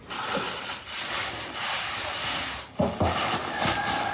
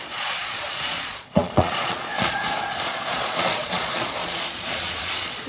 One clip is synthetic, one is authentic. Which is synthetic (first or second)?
second